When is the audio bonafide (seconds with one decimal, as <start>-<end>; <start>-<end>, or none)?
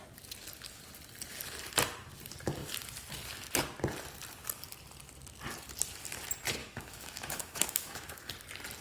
0.0-6.6; 8.3-8.8